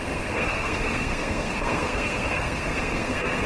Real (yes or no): no